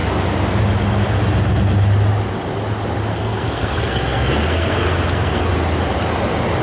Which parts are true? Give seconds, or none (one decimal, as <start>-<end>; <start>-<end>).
0.0-3.1; 5.5-6.6